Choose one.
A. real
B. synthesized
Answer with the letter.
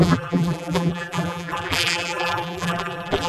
B